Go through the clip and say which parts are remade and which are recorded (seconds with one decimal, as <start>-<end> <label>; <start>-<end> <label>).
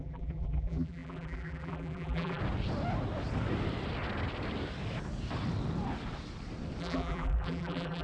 0.0-2.4 remade; 2.4-6.8 recorded; 6.8-8.0 remade